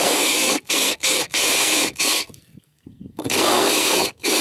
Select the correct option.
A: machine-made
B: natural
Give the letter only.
A